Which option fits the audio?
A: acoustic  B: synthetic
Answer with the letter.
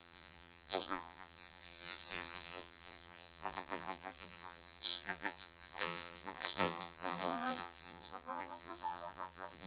B